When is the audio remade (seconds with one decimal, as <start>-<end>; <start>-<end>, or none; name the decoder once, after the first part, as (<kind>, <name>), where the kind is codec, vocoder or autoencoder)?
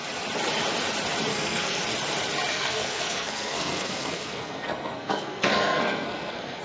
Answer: 1.3-1.8 (codec, SNAC); 2.5-6.6